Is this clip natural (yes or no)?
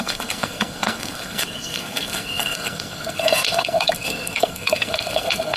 no